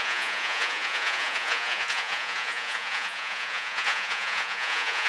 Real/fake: fake